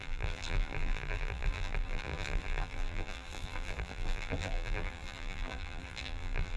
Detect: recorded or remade remade